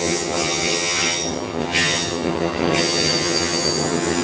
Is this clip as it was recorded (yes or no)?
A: no